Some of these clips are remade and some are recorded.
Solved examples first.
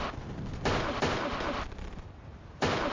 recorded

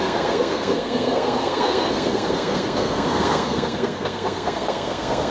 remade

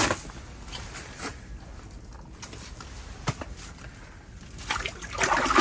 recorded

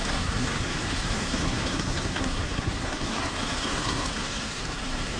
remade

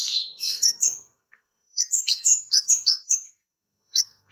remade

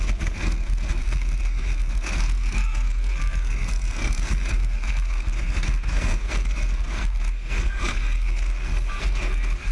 remade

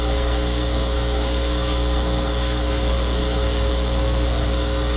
remade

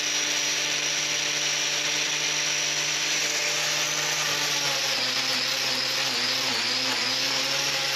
recorded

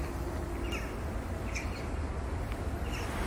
recorded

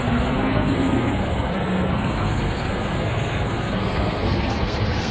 remade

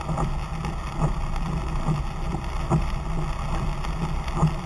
recorded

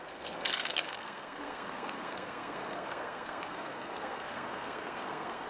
remade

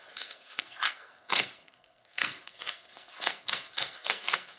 remade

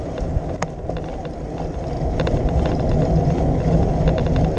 recorded